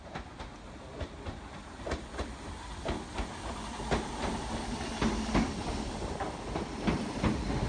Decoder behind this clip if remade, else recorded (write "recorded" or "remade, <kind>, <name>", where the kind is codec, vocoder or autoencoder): recorded